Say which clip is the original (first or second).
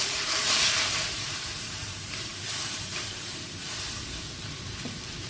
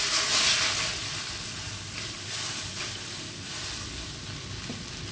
second